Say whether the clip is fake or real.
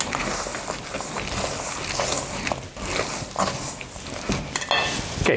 real